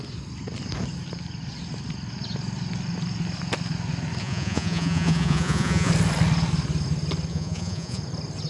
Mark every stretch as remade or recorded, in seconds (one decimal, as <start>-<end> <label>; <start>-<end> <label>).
0.0-4.2 recorded; 4.2-5.9 remade; 5.9-7.3 recorded; 7.3-8.0 remade; 8.0-8.5 recorded